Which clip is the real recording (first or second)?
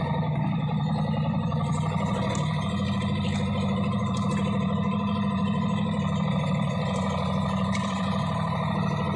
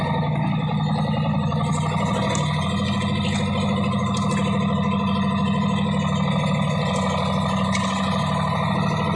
second